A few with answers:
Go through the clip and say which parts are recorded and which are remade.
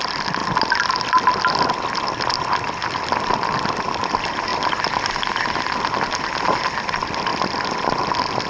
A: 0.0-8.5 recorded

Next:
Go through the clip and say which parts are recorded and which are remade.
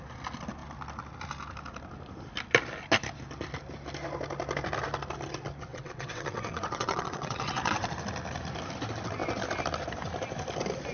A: 0.0-5.7 recorded; 5.7-7.9 remade; 7.9-10.9 recorded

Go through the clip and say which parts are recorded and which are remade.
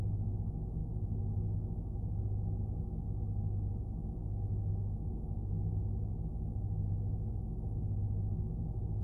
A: 0.0-0.8 recorded; 0.8-1.8 remade; 1.8-4.2 recorded; 4.2-7.8 remade; 7.8-9.0 recorded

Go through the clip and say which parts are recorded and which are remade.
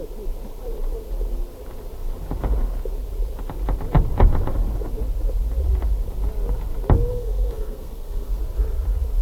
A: 0.0-7.1 recorded; 7.1-8.4 remade; 8.4-9.2 recorded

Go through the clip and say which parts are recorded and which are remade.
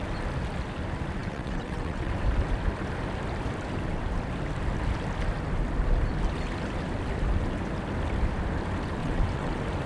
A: 0.0-1.2 recorded; 1.2-2.1 remade; 2.1-9.0 recorded; 9.0-9.5 remade; 9.5-9.9 recorded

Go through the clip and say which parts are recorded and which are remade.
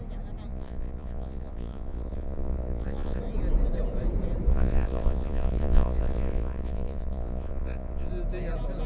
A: 0.0-0.5 recorded; 0.5-3.2 remade; 3.2-4.5 recorded; 4.5-8.1 remade; 8.1-8.9 recorded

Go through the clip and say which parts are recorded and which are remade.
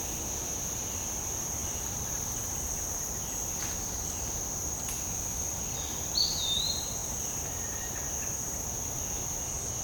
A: 0.0-9.8 recorded